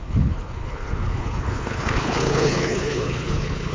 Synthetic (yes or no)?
yes